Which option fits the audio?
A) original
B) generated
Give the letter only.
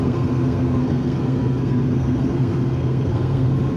B